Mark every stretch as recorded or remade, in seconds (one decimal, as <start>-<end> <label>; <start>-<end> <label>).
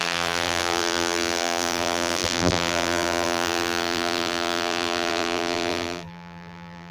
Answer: 0.0-6.9 remade